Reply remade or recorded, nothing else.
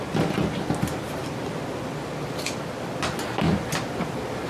recorded